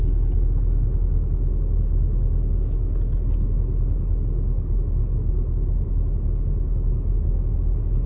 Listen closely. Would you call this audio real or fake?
real